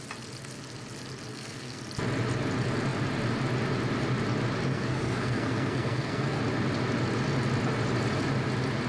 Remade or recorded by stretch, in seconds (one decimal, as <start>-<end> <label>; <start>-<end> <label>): 0.0-1.3 recorded; 1.3-1.8 remade; 1.8-4.7 recorded; 4.7-6.4 remade; 6.4-8.9 recorded